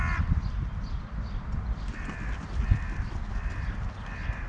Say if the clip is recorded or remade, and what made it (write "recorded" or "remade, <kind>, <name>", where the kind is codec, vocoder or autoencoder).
recorded